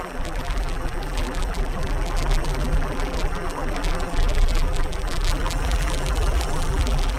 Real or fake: fake